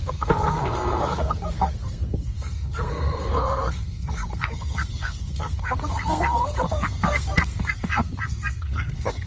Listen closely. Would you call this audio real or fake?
fake